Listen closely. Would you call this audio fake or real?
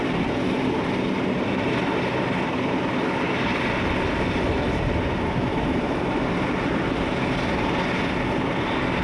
real